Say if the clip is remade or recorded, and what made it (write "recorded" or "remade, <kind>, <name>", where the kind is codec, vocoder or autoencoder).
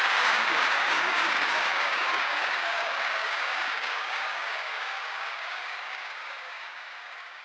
remade, codec, DAC